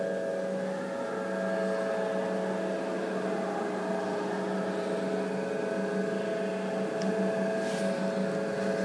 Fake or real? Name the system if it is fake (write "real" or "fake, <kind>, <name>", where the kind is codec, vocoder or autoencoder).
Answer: real